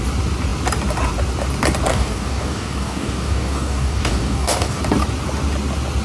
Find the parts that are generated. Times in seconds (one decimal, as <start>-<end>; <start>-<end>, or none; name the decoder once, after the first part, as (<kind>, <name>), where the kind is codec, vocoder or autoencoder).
1.9-4.8 (codec, DAC)